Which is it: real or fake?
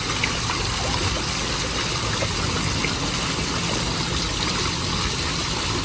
real